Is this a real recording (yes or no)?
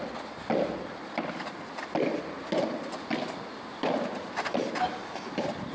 yes